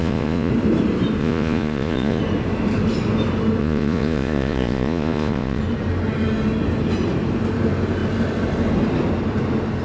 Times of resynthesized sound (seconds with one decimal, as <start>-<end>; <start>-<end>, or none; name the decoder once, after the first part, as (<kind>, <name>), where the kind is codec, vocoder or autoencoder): 0.0-0.5 (vocoder, Vocos); 1.2-2.2; 3.6-5.6